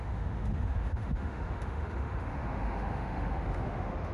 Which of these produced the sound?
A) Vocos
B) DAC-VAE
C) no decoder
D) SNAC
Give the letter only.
B